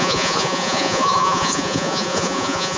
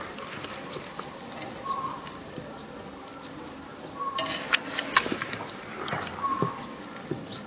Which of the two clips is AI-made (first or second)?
first